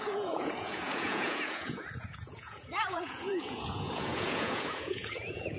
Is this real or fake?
fake